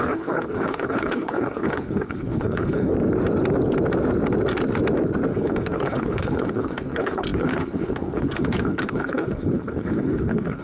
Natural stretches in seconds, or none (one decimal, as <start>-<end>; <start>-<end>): 2.9-5.3